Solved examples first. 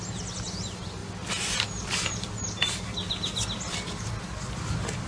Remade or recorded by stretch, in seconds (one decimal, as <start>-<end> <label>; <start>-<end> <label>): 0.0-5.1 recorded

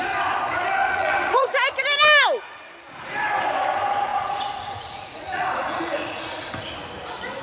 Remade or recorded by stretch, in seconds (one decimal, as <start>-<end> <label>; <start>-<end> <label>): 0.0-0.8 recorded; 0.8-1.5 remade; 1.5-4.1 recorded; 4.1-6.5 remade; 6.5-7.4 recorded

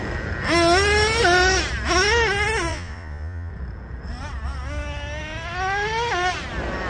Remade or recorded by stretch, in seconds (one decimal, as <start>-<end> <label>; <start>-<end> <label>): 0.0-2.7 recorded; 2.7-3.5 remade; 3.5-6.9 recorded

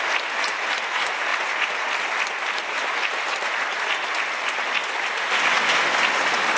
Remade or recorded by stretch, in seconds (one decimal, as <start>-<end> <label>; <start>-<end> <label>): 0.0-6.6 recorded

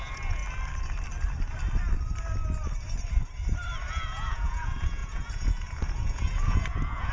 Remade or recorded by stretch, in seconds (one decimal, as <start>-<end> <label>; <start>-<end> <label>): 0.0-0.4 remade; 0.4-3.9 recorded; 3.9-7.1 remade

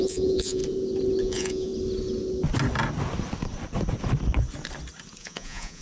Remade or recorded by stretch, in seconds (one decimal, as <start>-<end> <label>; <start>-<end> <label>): 0.0-0.6 remade; 0.6-1.2 recorded; 1.2-1.7 remade; 1.7-5.2 recorded; 5.2-5.8 remade

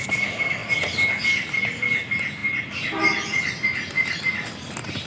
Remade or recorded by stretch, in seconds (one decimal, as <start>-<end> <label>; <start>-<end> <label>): 0.0-5.1 recorded

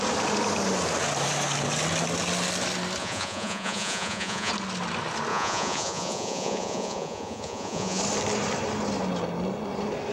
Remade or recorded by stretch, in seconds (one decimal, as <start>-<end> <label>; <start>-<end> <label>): 0.0-3.0 recorded; 3.0-4.5 remade; 4.5-5.3 recorded; 5.3-8.0 remade; 8.0-10.1 recorded